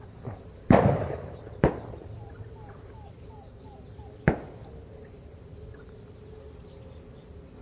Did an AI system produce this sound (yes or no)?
yes